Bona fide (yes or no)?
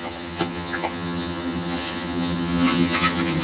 no